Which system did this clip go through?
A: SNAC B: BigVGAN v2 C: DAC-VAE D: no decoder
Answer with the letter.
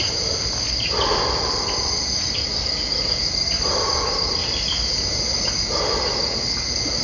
D